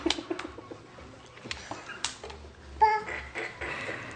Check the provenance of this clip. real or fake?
real